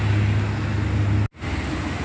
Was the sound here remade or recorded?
recorded